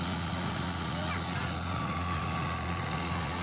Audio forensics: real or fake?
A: fake